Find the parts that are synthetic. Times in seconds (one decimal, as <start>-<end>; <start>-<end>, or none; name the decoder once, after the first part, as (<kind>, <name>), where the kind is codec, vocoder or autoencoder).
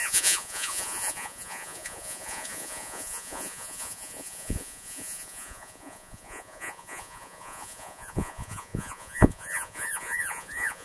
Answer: 0.0-10.8 (vocoder, Vocos)